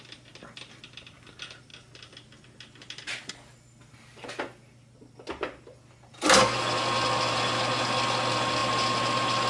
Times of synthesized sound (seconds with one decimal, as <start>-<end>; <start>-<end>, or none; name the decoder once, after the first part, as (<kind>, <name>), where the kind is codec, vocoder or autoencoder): none